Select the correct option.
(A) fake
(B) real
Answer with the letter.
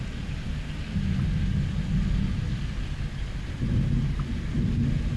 B